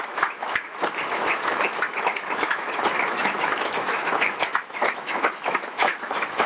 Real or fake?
fake